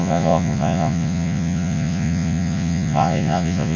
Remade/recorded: remade